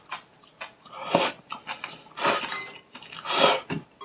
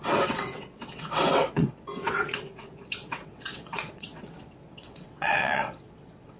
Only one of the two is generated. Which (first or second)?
second